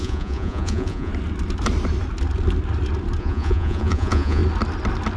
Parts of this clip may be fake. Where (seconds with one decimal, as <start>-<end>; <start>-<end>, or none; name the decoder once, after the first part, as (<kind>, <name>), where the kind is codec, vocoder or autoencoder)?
0.0-1.1 (vocoder, Vocos); 3.2-4.4